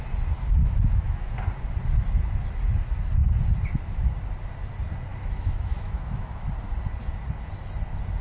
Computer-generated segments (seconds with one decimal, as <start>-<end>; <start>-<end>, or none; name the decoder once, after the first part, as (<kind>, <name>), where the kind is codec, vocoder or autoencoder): 0.6-1.3 (autoencoder, DAC-VAE); 5.1-6.5